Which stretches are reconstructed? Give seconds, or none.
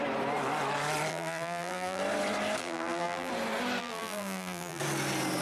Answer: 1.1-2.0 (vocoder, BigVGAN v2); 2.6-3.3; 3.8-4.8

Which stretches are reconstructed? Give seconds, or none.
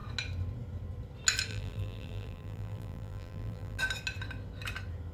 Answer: 1.5-3.8 (vocoder, BigVGAN v2)